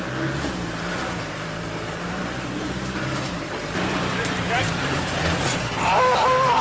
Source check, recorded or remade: remade